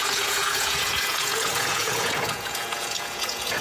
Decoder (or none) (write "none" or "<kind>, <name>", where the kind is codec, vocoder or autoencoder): vocoder, Vocos